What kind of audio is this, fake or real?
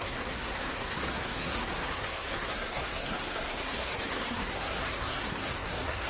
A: fake